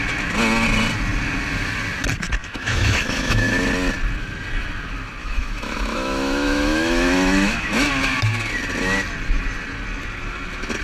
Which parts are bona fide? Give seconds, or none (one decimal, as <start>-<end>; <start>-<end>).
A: 0.0-2.4; 3.7-5.2; 7.9-10.8